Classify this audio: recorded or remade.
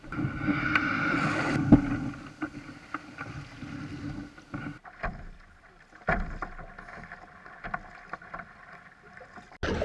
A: recorded